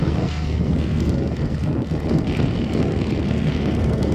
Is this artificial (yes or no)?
yes